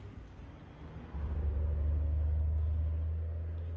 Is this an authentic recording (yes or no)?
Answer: yes